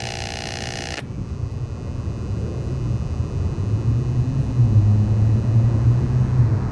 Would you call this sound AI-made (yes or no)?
no